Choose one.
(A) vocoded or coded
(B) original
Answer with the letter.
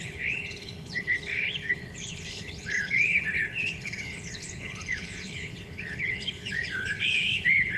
A